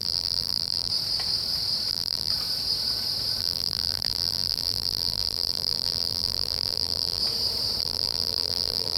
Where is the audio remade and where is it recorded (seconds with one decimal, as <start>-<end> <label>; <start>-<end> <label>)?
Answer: 0.0-0.9 remade; 0.9-1.9 recorded; 1.9-2.3 remade; 2.3-3.4 recorded; 3.4-7.2 remade; 7.2-7.8 recorded; 7.8-9.0 remade